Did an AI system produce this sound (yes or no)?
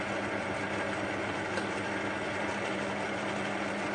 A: no